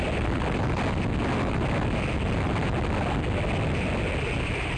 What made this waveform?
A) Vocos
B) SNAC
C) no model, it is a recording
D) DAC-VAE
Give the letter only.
C